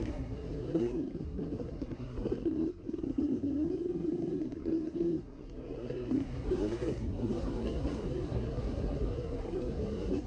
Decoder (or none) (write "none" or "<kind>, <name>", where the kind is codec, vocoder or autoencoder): codec, SNAC